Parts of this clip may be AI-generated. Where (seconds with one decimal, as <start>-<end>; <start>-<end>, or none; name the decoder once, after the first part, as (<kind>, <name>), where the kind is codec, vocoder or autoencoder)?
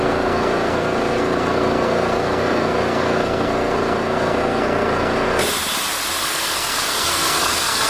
0.0-5.4 (codec, SNAC); 6.2-7.9